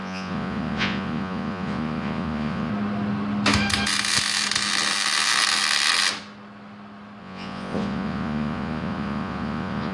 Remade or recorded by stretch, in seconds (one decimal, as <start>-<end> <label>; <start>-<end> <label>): 0.0-2.7 remade; 2.7-7.2 recorded; 7.2-9.9 remade